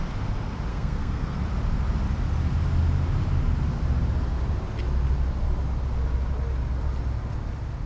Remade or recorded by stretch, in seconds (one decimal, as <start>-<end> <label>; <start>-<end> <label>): 0.0-0.7 recorded; 0.7-1.4 remade; 1.4-7.9 recorded